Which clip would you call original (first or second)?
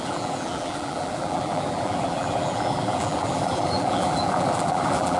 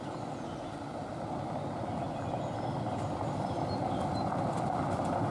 second